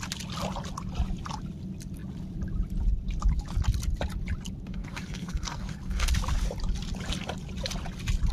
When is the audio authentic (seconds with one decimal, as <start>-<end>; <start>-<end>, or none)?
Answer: 0.0-4.7; 6.1-8.3